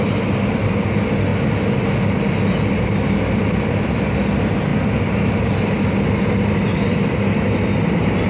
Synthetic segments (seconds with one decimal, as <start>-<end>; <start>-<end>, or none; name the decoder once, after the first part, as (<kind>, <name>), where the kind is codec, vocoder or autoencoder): none